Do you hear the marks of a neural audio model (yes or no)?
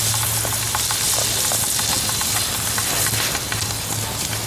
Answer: no